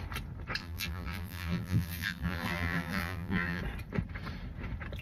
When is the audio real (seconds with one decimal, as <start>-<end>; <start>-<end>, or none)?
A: 0.0-0.6; 3.6-5.0